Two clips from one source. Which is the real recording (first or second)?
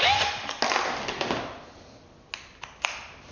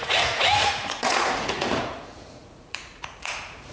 first